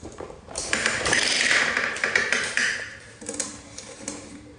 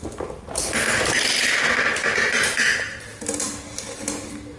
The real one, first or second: second